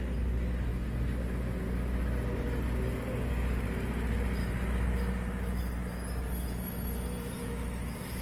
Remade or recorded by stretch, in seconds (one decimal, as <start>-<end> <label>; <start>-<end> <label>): 0.0-4.4 recorded; 4.4-5.6 remade; 5.6-7.4 recorded; 7.4-8.2 remade